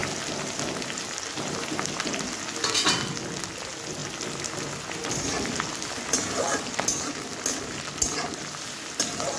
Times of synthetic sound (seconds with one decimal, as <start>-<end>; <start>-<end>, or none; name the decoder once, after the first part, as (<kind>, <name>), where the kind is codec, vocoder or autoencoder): none